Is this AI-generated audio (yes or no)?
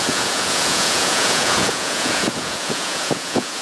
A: yes